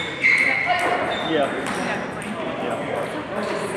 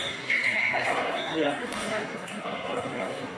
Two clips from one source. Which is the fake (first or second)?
second